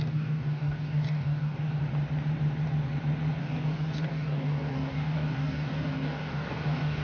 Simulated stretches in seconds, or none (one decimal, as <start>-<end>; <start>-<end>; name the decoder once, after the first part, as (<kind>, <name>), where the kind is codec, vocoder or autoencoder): 0.0-1.8 (codec, DAC); 3.4-7.0